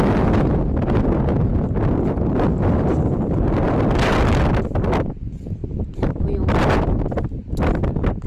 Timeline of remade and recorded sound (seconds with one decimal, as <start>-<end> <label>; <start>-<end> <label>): 0.0-8.3 recorded